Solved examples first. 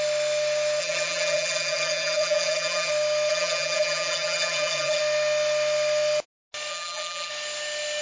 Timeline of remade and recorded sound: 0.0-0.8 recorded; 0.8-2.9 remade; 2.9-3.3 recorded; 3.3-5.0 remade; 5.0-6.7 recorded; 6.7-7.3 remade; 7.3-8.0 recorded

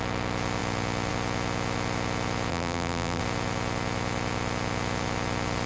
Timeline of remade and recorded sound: 0.0-2.5 recorded; 2.5-3.2 remade; 3.2-5.7 recorded

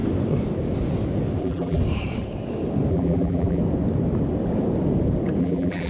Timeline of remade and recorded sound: 0.0-1.4 recorded; 1.4-1.8 remade; 1.8-2.9 recorded; 2.9-3.6 remade; 3.6-5.4 recorded; 5.4-5.9 remade